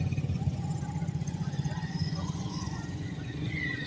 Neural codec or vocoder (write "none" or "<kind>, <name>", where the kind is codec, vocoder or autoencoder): vocoder, Vocos